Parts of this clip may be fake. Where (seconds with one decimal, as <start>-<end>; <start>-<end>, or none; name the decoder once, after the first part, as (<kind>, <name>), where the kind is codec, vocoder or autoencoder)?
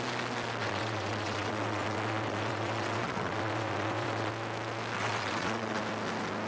0.6-4.3 (vocoder, WaveNeXt); 5.0-5.8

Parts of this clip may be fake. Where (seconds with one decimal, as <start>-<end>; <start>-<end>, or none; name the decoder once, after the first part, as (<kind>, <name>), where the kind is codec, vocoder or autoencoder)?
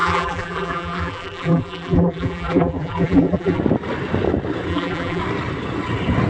0.0-3.6 (vocoder, BigVGAN v2); 4.7-5.2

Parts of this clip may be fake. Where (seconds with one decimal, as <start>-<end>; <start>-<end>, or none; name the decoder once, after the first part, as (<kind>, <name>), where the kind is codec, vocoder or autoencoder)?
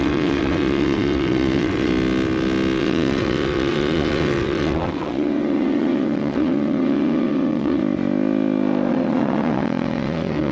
0.0-1.9 (vocoder, WaveNeXt); 2.8-7.8; 8.9-10.5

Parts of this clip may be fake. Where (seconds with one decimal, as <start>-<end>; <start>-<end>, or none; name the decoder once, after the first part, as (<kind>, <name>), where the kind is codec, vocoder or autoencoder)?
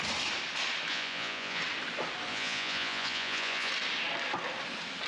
0.9-1.6 (vocoder, Vocos); 2.3-3.7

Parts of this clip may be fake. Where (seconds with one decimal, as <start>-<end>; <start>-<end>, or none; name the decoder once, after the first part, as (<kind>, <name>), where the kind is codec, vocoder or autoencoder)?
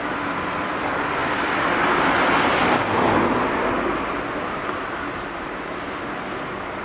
none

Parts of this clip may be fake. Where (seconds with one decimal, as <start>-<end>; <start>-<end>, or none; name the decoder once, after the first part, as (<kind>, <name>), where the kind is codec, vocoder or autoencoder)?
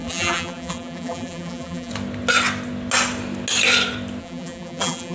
0.0-1.9 (vocoder, BigVGAN v2); 4.2-5.1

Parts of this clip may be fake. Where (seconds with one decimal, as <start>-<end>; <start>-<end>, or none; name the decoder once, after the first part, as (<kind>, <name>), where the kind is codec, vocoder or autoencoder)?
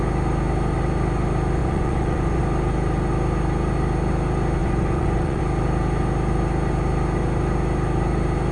1.6-2.4 (vocoder, Vocos); 4.6-5.4